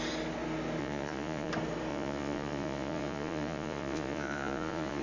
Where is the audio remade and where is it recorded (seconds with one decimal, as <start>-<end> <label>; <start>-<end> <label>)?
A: 0.0-0.8 recorded; 0.8-1.5 remade; 1.5-1.9 recorded; 1.9-5.0 remade